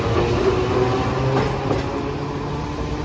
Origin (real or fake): real